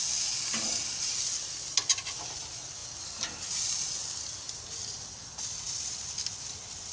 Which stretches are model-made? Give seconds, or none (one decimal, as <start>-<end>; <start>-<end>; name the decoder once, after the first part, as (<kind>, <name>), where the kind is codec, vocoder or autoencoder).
none